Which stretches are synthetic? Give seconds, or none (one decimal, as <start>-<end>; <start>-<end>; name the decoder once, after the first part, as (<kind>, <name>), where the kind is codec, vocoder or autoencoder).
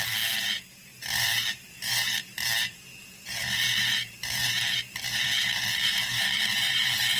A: 0.0-7.2 (vocoder, BigVGAN v2)